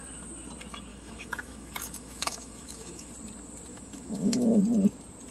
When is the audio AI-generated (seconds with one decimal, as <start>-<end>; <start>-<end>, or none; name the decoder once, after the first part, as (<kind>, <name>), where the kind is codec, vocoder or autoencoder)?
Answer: 0.9-3.1 (autoencoder, DAC-VAE); 3.7-4.6